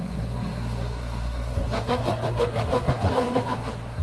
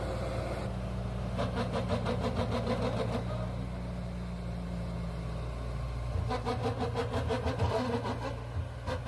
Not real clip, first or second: first